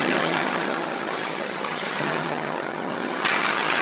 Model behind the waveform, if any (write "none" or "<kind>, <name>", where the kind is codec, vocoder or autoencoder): vocoder, HiFi-GAN